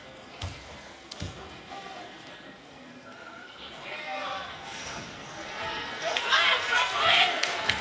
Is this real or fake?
fake